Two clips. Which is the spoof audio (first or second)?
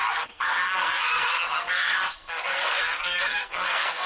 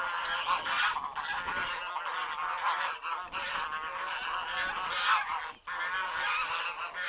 first